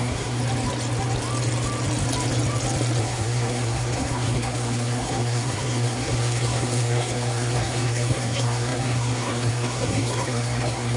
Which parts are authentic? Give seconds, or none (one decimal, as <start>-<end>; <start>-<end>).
0.4-3.0